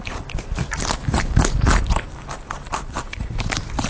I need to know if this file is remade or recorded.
recorded